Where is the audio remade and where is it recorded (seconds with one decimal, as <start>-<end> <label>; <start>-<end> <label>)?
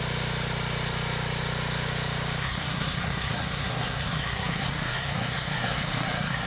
0.0-2.4 recorded; 2.4-6.5 remade